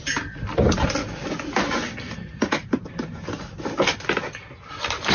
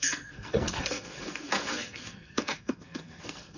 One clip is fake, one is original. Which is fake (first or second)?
second